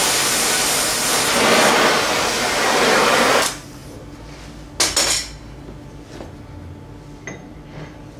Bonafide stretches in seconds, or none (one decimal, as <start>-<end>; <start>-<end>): 3.8-7.5